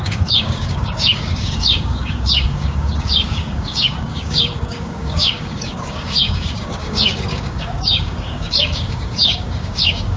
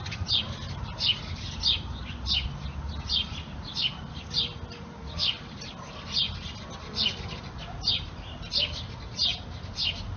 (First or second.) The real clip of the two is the second